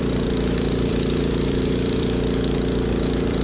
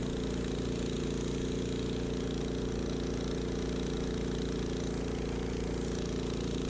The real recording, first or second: second